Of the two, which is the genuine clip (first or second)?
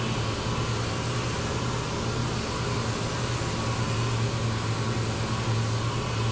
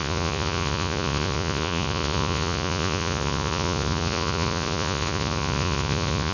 first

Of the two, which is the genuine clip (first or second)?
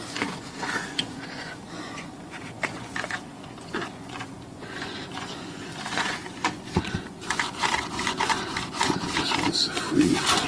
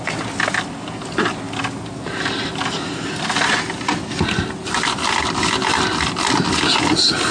second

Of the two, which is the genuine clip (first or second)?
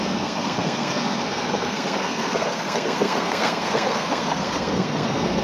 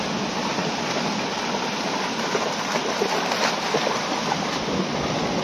second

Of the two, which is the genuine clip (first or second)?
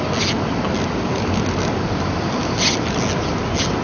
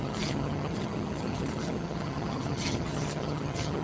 first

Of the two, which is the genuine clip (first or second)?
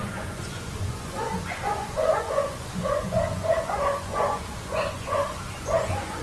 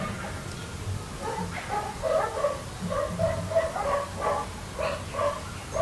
second